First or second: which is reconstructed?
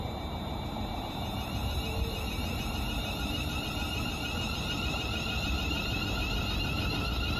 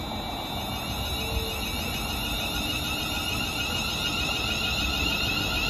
first